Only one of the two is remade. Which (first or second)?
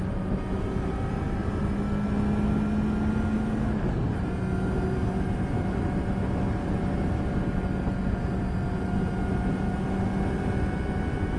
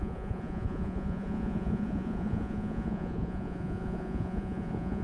second